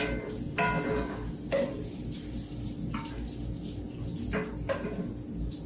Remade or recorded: recorded